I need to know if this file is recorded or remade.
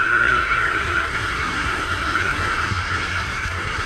remade